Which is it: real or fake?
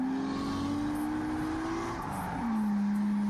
real